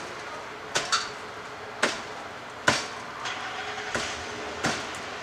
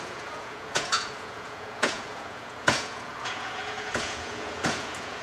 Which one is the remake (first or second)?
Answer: second